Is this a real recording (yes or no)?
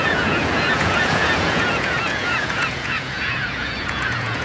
no